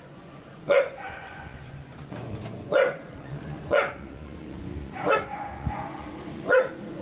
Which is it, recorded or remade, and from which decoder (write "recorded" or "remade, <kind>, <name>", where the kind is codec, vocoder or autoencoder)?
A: remade, vocoder, Vocos